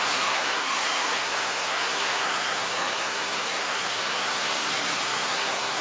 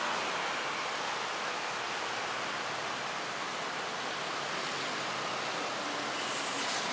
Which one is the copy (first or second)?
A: first